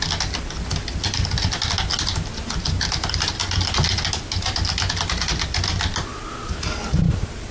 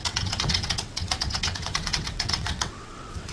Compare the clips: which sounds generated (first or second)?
second